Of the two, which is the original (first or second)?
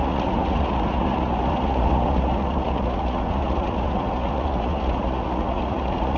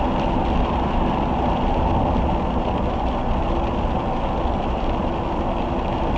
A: second